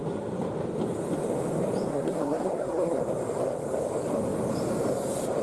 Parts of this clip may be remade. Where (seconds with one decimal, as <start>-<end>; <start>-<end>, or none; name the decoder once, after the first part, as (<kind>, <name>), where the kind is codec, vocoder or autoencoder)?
1.9-3.0 (codec, SNAC)